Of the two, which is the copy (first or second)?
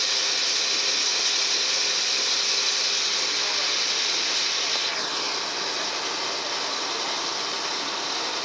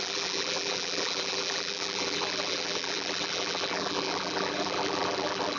second